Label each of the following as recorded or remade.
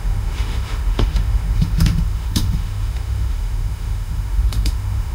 remade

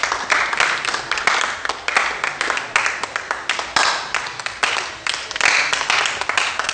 recorded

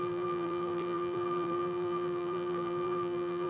remade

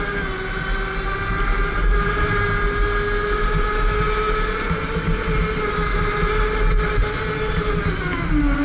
recorded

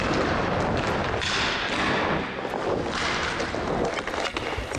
recorded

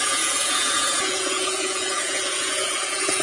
remade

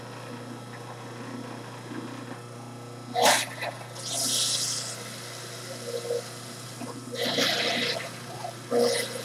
recorded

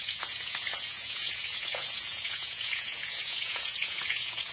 remade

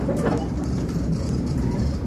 remade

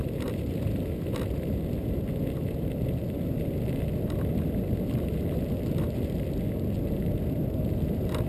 recorded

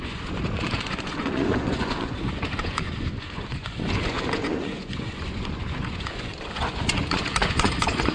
remade